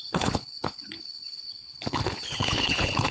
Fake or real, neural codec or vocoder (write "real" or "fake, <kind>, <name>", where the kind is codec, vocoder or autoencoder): fake, codec, HILCodec